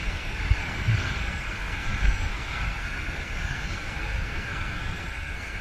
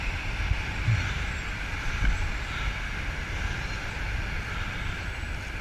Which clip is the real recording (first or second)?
second